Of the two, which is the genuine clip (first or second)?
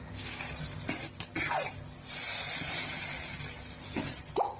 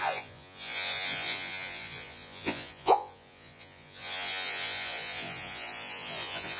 first